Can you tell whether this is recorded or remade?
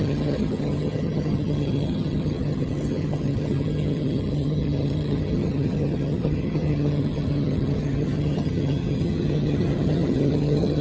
remade